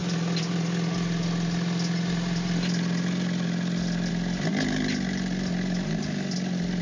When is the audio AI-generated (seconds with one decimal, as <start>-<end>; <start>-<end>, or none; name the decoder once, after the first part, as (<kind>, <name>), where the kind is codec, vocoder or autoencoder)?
none